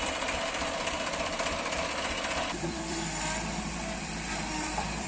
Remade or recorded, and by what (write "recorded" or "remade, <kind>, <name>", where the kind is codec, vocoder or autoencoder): remade, vocoder, BigVGAN v2